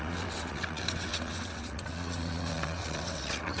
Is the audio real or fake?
fake